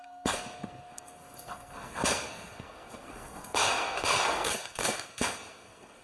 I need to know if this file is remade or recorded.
remade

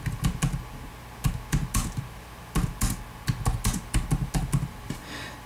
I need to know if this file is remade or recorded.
recorded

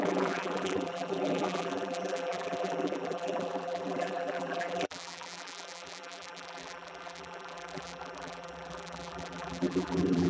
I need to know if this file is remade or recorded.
remade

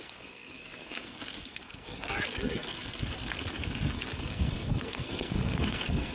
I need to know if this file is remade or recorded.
remade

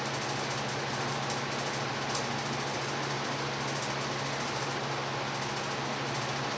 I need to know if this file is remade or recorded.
recorded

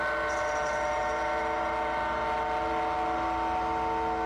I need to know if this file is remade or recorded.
recorded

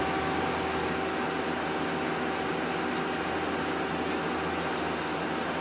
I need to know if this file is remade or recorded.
recorded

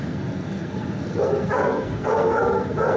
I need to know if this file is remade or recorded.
remade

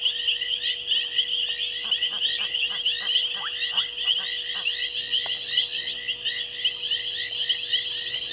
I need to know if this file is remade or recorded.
recorded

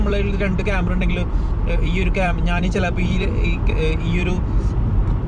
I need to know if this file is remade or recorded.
remade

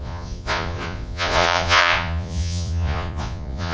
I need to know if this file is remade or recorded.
remade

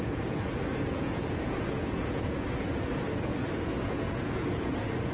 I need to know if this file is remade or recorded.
remade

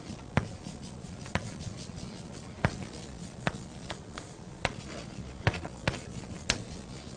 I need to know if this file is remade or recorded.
remade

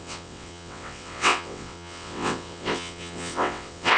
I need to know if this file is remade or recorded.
remade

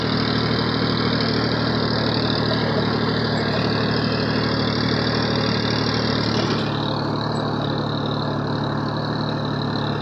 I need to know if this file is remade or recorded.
recorded